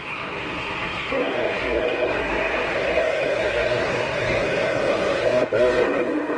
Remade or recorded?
remade